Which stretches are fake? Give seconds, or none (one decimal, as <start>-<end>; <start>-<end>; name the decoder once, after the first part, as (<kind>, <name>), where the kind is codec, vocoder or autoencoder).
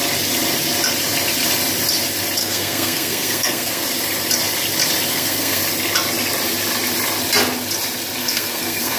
2.4-3.8 (codec, SNAC); 5.1-5.6; 8.2-9.0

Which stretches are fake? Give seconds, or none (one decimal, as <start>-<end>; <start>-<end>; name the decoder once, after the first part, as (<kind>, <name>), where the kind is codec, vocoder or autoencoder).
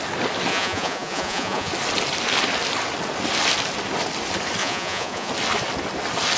0.5-1.7 (vocoder, Vocos); 4.6-5.3